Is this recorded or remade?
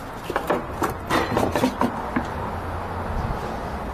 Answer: recorded